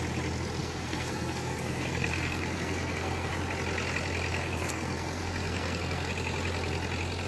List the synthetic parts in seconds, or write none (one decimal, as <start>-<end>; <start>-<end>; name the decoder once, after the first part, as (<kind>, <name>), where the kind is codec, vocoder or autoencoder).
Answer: 0.6-3.3 (codec, SNAC); 4.3-6.1